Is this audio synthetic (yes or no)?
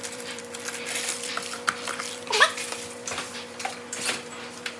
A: yes